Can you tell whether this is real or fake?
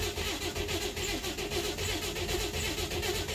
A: real